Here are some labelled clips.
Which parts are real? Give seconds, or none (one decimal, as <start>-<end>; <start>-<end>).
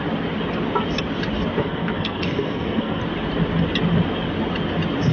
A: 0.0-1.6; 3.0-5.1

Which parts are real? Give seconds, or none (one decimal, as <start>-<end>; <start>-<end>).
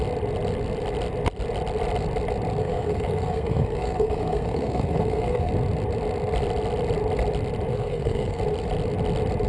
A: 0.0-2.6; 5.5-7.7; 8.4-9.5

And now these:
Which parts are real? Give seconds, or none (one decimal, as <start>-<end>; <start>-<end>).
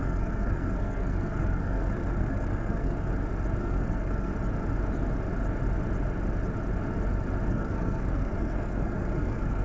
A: 3.1-3.6; 4.3-7.5